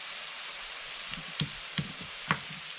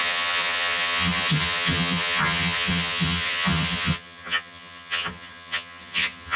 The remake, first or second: second